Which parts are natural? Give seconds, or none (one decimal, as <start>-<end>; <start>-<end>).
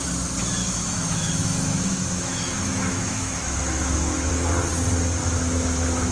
0.0-0.6; 4.3-5.2